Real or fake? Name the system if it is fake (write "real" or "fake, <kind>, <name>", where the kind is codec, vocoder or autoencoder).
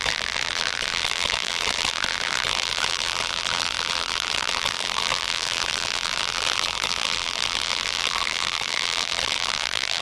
fake, vocoder, BigVGAN v2